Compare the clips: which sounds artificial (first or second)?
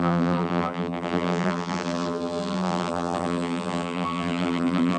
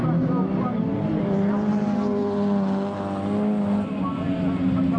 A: first